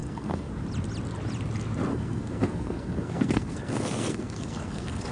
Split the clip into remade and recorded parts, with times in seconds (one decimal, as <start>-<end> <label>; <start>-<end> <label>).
0.0-0.5 remade; 0.5-1.9 recorded; 1.9-5.1 remade